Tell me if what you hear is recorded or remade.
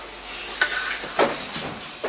recorded